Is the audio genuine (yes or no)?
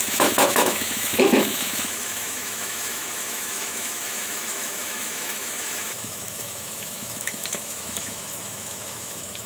no